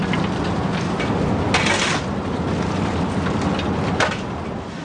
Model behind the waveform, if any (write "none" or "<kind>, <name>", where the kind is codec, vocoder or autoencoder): none